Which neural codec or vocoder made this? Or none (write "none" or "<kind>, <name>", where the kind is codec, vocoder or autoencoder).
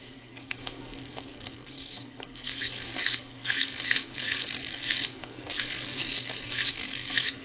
codec, SNAC